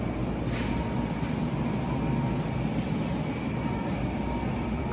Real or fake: real